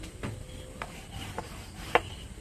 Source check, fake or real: real